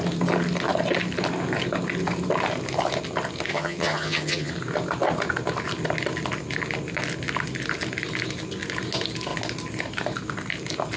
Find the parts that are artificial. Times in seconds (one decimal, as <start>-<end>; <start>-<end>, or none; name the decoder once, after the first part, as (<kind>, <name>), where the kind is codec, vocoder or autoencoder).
3.5-4.5 (vocoder, HiFi-GAN)